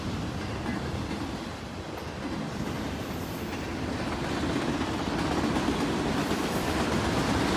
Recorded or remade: recorded